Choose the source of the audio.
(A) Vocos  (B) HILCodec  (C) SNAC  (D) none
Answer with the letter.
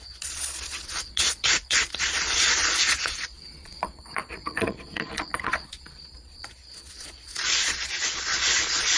A